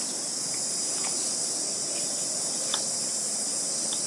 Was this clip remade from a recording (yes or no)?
no